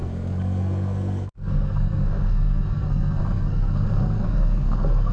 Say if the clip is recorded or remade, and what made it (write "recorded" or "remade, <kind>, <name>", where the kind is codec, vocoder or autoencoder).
remade, codec, SNAC